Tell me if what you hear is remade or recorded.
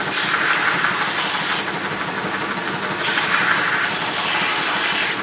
recorded